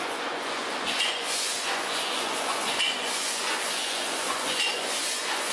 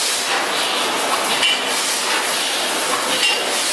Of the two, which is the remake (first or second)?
first